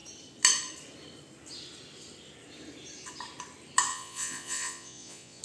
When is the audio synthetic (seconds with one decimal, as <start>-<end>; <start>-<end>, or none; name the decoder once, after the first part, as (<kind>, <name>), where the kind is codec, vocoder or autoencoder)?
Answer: 3.9-5.4 (vocoder, Vocos)